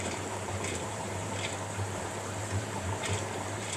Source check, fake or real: fake